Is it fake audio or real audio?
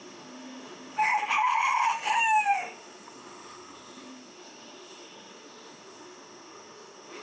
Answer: fake